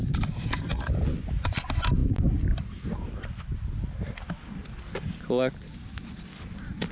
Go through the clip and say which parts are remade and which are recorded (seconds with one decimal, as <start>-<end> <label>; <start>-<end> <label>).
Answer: 0.0-6.9 recorded